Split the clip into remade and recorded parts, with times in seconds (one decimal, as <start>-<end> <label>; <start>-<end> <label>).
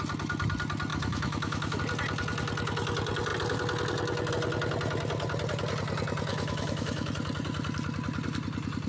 0.0-0.9 recorded; 0.9-1.8 remade; 1.8-6.3 recorded; 6.3-7.1 remade; 7.1-8.9 recorded